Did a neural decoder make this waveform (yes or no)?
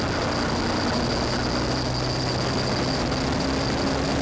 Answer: no